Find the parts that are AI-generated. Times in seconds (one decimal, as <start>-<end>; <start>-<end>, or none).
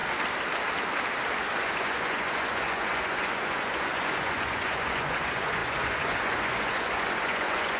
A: 1.5-7.8